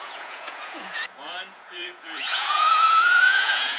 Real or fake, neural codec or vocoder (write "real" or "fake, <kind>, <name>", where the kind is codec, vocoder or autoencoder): fake, vocoder, Vocos